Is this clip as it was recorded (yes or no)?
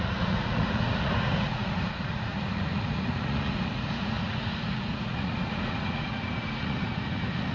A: no